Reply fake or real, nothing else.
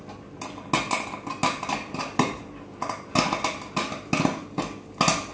real